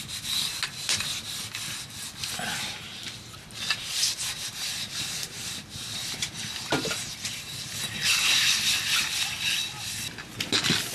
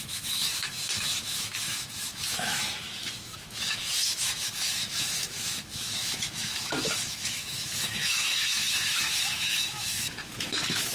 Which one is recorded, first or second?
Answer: first